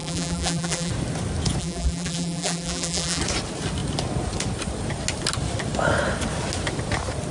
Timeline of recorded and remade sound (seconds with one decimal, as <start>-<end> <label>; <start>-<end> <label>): 0.0-0.9 remade; 0.9-1.6 recorded; 1.6-3.2 remade; 3.2-7.3 recorded